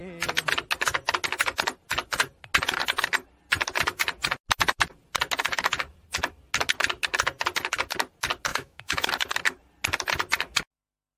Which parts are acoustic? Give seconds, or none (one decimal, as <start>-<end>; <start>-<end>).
0.0-8.5; 9.1-11.2